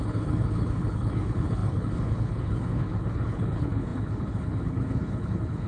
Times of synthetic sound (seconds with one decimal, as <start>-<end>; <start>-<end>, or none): 0.0-5.7